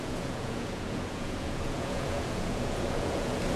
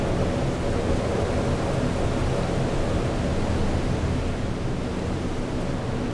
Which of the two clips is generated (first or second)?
first